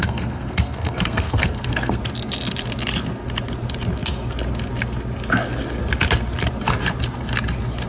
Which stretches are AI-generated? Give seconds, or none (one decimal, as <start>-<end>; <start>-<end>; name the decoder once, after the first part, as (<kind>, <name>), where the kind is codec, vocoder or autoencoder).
0.0-2.0 (codec, SNAC)